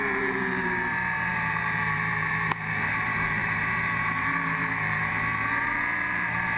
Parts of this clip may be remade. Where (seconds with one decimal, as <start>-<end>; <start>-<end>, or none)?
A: 0.0-6.6